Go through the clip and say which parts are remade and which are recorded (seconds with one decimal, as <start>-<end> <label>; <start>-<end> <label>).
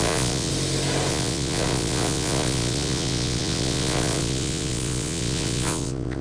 0.0-0.5 remade; 0.5-1.1 recorded; 1.1-6.2 remade